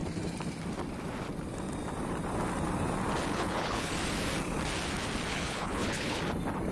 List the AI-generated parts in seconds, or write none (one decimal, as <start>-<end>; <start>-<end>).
3.3-3.9; 5.3-6.2